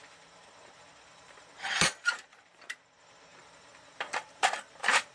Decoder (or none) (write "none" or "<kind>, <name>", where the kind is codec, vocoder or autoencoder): vocoder, BigVGAN v2